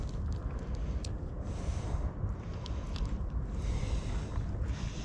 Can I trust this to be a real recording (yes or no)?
yes